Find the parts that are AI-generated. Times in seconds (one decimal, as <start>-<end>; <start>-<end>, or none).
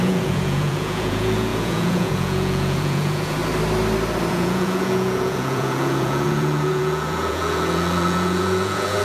0.0-3.4; 4.3-9.0